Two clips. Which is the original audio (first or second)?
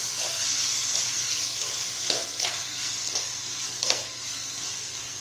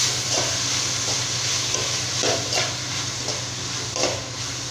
second